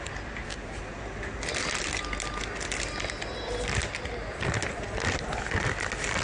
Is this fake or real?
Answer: real